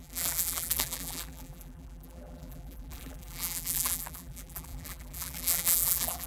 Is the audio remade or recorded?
remade